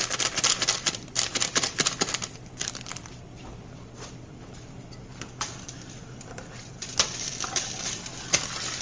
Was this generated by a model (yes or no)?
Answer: yes